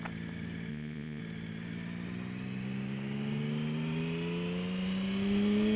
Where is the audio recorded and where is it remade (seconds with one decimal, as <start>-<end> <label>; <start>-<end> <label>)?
0.0-0.7 recorded; 0.7-1.2 remade; 1.2-5.8 recorded